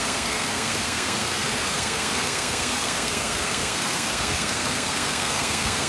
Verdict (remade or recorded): remade